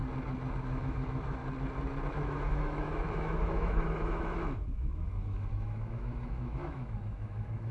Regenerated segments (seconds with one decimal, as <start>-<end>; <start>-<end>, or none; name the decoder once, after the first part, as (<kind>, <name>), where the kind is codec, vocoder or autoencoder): 0.6-1.4 (autoencoder, DAC-VAE); 2.1-7.7

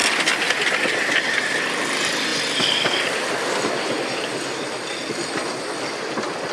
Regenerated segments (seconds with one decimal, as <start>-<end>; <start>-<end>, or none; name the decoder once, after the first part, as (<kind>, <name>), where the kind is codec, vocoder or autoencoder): none

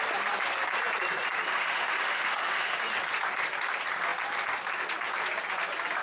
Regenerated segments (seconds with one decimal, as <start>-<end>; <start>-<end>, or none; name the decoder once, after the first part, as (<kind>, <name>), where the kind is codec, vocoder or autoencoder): 1.5-2.8 (autoencoder, DAC-VAE)

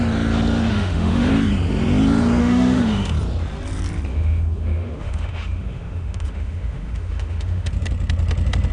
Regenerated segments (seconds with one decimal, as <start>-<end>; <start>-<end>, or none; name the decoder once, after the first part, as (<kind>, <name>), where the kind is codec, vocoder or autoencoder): 0.7-1.3 (autoencoder, DAC-VAE); 2.4-3.1; 4.1-7.7

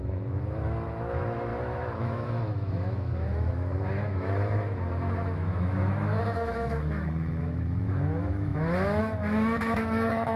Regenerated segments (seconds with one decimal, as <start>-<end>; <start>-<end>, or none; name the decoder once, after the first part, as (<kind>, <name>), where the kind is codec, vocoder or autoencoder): 0.0-10.4 (autoencoder, DAC-VAE)

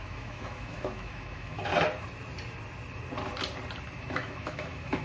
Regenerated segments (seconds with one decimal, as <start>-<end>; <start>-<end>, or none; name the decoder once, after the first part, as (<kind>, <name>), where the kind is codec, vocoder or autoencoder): 0.0-1.7 (autoencoder, DAC-VAE); 4.0-5.0

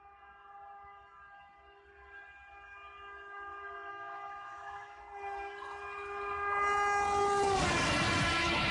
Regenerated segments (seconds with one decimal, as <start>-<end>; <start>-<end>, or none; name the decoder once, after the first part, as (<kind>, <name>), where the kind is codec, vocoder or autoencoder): 3.9-5.0 (autoencoder, DAC-VAE)